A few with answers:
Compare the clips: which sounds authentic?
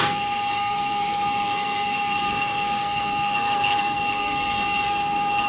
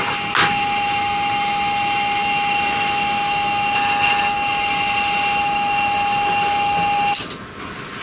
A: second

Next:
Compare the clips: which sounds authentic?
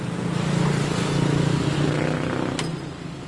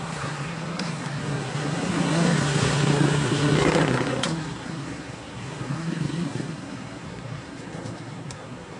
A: first